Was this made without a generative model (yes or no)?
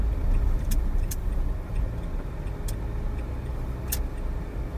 yes